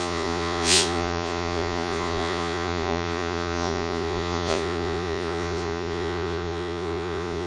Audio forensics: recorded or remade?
remade